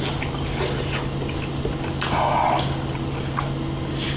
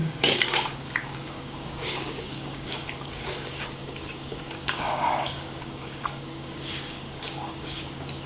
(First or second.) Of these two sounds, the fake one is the second